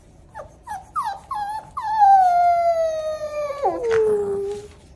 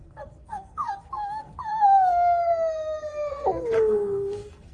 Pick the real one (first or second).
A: first